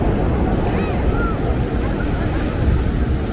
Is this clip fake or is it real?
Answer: real